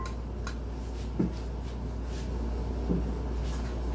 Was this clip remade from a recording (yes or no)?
no